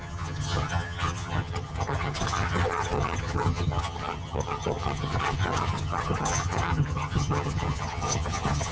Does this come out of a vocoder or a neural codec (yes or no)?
yes